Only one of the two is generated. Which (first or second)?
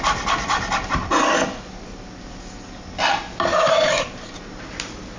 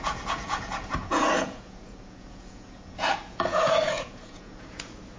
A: second